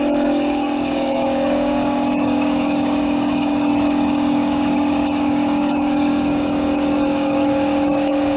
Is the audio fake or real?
fake